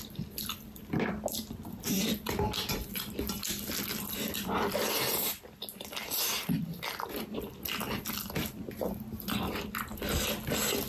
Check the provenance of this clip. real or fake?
real